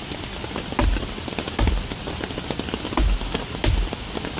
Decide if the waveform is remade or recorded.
recorded